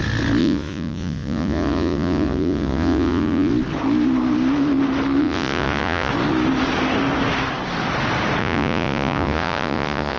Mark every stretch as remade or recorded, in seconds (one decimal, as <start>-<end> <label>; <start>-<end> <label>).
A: 0.0-0.4 recorded; 0.4-3.5 remade; 3.5-5.2 recorded; 5.2-6.1 remade; 6.1-8.4 recorded; 8.4-10.2 remade